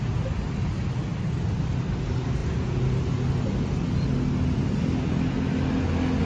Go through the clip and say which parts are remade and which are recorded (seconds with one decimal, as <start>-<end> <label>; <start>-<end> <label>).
0.0-6.3 recorded